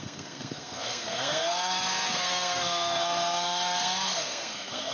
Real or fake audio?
fake